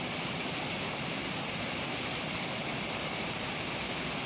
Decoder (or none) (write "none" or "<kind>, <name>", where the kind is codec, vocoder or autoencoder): none